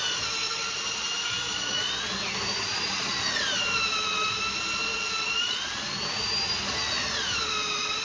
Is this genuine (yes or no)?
yes